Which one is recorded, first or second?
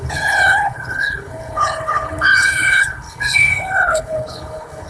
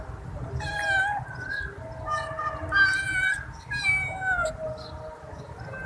second